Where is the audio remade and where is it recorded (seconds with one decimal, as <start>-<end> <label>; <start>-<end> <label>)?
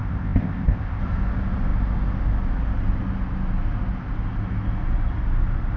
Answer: 0.0-1.0 remade; 1.0-5.8 recorded